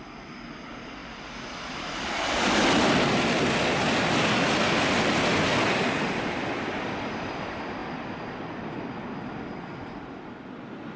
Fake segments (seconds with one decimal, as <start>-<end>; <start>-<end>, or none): none